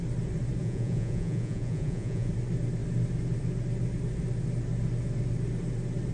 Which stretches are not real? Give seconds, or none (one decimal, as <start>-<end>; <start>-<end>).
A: 0.6-2.3